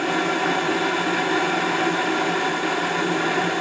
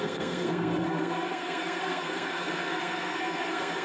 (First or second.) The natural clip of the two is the first